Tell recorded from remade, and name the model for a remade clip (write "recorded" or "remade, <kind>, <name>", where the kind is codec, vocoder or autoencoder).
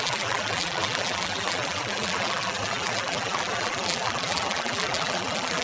remade, vocoder, BigVGAN v2